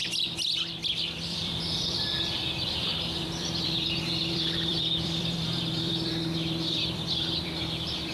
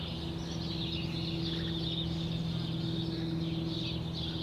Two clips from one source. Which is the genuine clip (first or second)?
second